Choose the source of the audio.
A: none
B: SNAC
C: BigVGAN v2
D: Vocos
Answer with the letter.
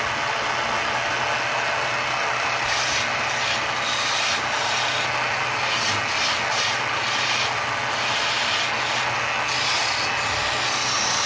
A